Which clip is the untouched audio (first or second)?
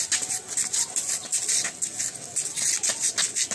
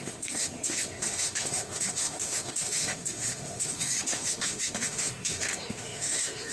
first